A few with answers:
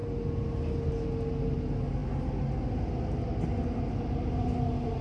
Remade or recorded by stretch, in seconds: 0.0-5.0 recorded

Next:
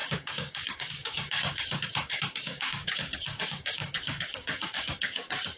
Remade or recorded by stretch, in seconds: 0.0-5.6 remade

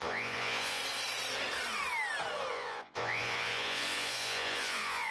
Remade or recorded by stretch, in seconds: 0.0-0.8 remade; 0.8-2.5 recorded; 2.5-5.1 remade

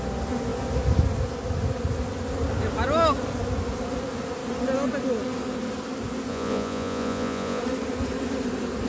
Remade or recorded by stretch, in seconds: 0.0-6.3 recorded; 6.3-7.6 remade; 7.6-8.9 recorded

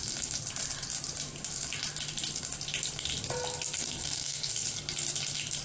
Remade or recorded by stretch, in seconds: 0.0-3.8 recorded; 3.8-4.5 remade; 4.5-5.6 recorded

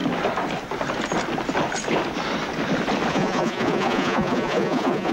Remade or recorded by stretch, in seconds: 0.0-3.1 recorded; 3.1-5.1 remade

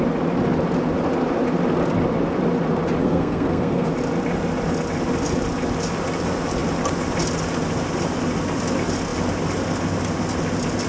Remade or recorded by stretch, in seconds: 0.0-3.0 recorded; 3.0-3.9 remade; 3.9-10.9 recorded

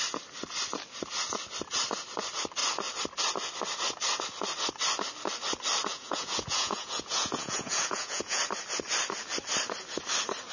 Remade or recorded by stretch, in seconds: 0.0-5.9 recorded; 5.9-8.4 remade; 8.4-10.5 recorded